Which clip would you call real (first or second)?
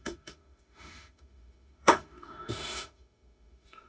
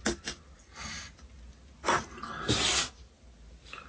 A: second